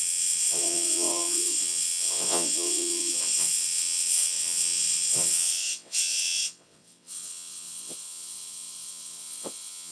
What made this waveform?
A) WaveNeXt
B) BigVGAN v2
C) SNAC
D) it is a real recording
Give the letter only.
A